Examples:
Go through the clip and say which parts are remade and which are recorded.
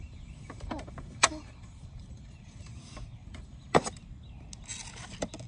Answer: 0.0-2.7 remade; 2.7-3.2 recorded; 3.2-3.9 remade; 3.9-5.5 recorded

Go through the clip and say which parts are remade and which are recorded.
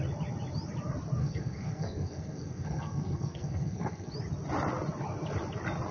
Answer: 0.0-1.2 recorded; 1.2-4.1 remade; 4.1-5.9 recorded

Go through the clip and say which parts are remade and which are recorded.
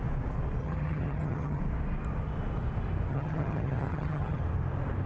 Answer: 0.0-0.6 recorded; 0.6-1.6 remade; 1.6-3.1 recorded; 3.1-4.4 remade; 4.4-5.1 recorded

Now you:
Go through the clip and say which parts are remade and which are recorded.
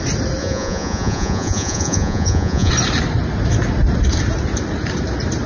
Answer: 0.0-0.4 recorded; 0.4-2.7 remade; 2.7-5.5 recorded